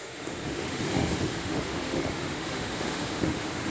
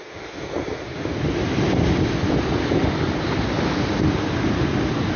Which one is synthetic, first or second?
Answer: first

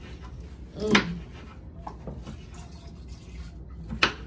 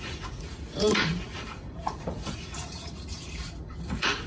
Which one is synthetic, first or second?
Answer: second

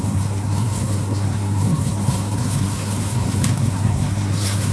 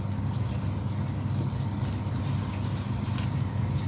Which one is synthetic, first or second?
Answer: first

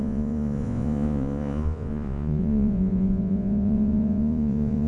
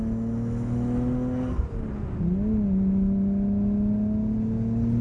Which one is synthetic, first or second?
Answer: first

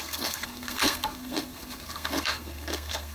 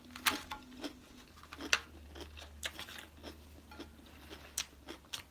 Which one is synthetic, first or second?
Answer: first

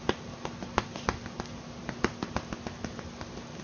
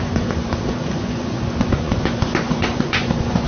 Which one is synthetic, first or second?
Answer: second